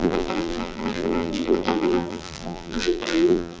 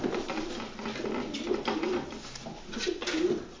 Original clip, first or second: second